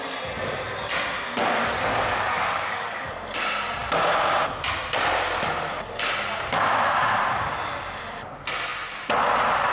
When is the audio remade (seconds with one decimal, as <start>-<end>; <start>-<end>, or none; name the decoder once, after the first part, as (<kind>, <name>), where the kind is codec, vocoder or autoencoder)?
1.9-3.1 (codec, DAC)